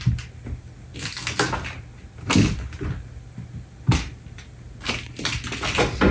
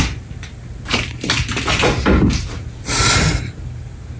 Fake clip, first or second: second